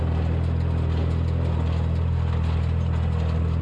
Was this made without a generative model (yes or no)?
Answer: yes